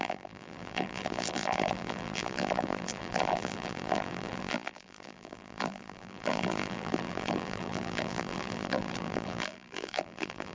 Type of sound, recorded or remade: remade